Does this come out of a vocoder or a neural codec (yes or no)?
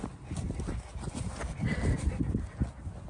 no